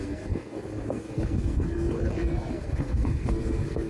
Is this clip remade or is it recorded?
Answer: remade